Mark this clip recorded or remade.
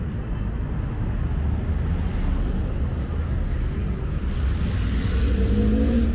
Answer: recorded